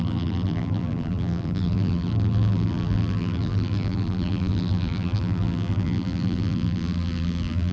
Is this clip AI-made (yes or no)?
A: yes